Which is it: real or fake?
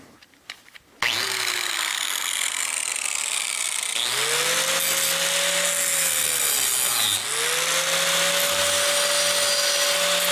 real